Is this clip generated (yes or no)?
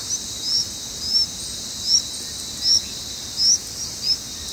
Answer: no